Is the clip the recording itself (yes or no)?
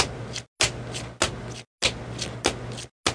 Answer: yes